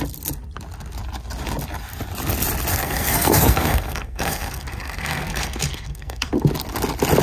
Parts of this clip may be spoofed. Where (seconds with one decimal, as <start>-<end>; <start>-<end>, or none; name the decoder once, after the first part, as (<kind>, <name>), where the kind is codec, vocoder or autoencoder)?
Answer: 2.7-6.3 (codec, SNAC)